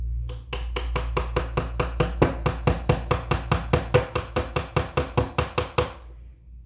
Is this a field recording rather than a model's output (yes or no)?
yes